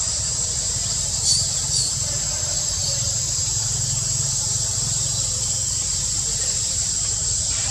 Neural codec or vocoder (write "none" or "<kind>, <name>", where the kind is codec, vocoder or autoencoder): vocoder, BigVGAN v2